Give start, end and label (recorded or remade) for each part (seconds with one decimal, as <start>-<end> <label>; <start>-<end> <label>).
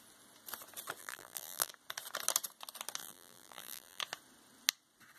0.0-1.0 recorded; 1.0-1.7 remade; 1.7-3.0 recorded; 3.0-4.0 remade; 4.0-5.2 recorded